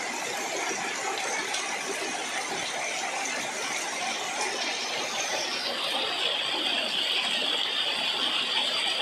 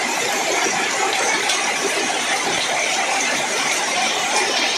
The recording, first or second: first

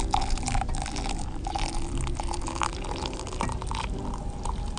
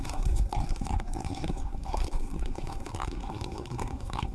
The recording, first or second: first